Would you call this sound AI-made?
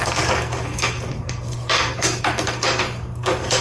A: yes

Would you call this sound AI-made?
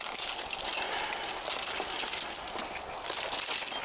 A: no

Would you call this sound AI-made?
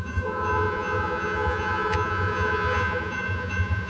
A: yes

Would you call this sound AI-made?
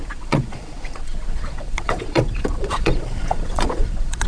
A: yes